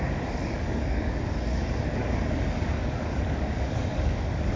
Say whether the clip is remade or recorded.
remade